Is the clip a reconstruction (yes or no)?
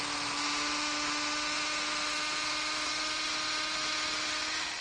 no